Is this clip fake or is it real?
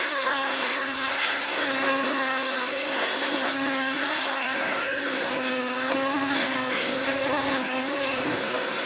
fake